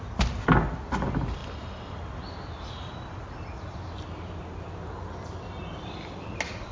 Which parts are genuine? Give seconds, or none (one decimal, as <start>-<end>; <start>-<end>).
0.0-6.7